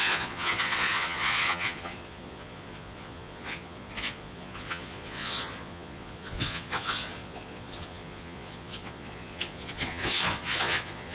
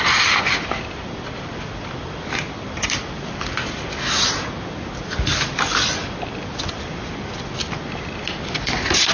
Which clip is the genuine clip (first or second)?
second